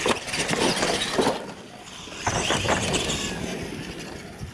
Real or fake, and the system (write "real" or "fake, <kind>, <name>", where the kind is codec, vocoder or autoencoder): real